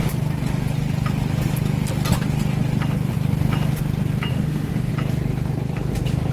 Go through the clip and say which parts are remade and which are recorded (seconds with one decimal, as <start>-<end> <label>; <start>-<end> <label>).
0.0-4.3 recorded; 4.3-4.9 remade; 4.9-6.3 recorded